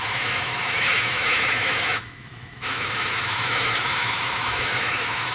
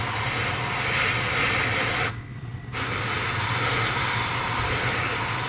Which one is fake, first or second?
first